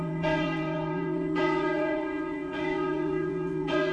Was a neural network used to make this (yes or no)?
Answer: yes